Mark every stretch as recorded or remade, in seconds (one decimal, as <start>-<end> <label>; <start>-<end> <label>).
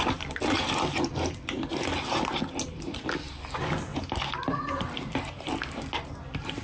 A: 0.0-6.6 recorded